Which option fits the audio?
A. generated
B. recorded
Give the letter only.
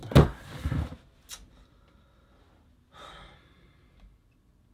B